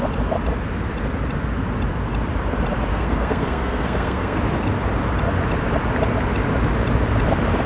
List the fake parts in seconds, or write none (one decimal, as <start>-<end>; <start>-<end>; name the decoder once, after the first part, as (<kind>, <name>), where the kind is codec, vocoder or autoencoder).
2.9-4.4 (codec, SNAC)